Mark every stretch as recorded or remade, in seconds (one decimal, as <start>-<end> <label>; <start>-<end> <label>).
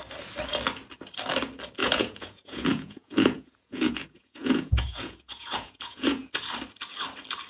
0.0-1.8 recorded; 1.8-6.3 remade; 6.3-7.5 recorded